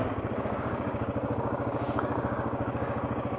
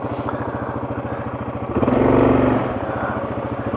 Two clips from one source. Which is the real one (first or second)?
second